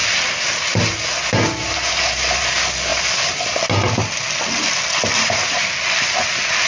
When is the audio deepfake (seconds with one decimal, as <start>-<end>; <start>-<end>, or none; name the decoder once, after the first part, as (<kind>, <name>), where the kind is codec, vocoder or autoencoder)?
none